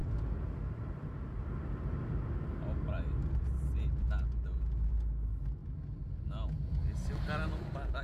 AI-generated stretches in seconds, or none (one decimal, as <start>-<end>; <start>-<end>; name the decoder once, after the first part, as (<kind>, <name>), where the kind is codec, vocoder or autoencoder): none